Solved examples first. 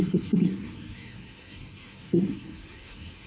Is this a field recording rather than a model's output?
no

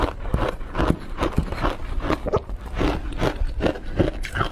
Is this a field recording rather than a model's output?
yes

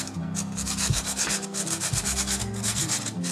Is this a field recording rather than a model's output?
no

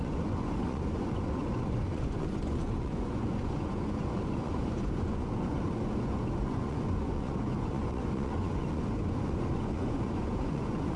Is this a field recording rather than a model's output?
no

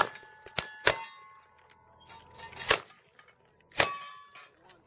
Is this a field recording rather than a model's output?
yes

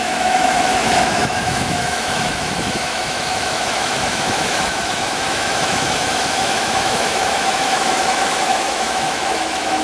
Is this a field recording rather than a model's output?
no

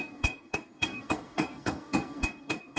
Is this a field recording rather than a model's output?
no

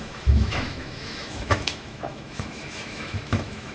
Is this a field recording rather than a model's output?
no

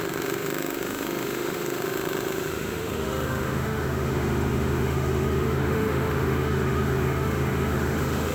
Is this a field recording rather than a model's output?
no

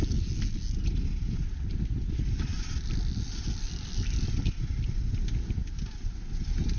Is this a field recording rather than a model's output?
yes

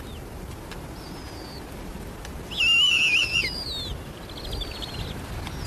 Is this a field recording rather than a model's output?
yes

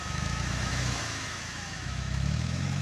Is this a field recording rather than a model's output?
no